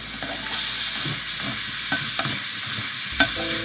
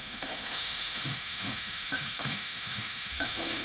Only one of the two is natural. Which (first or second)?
first